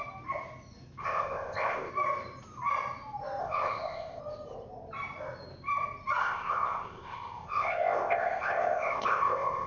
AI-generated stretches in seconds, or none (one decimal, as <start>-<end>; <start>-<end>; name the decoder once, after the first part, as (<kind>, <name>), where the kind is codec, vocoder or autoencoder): 1.0-1.9 (codec, ZipCodec); 3.4-4.2; 6.2-9.7